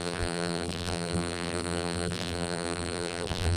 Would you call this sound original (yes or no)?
no